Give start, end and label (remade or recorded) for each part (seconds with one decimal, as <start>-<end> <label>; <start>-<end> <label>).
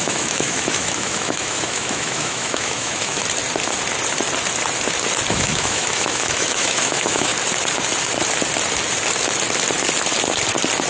0.0-3.2 remade; 3.2-5.3 recorded; 5.3-7.3 remade; 7.3-10.9 recorded